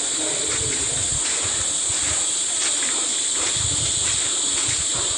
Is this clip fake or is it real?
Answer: fake